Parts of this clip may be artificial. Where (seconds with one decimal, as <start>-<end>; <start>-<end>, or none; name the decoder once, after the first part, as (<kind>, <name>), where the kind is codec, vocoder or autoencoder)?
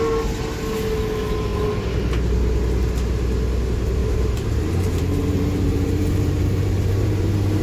4.0-7.6 (vocoder, BigVGAN v2)